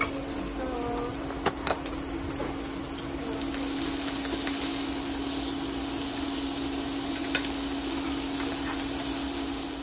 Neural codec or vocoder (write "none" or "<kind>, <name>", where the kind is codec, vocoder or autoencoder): none